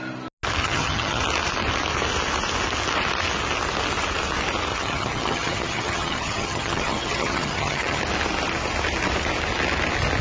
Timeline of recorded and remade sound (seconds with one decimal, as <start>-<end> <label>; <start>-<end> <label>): 0.0-0.6 recorded; 0.6-1.2 remade; 1.2-4.7 recorded; 4.7-8.0 remade; 8.0-10.2 recorded